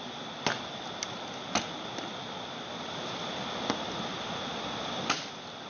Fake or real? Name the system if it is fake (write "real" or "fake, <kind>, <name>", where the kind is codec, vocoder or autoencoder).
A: real